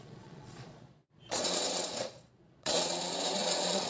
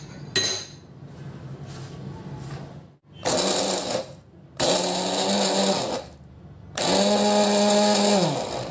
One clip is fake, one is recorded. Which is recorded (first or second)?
second